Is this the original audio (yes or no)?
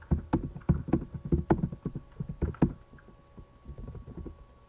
yes